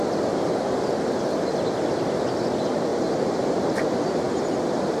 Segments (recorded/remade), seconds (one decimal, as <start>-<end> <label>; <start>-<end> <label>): 0.0-2.9 recorded; 2.9-3.7 remade; 3.7-5.0 recorded